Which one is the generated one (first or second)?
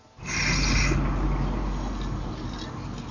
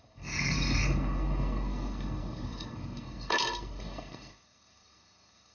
second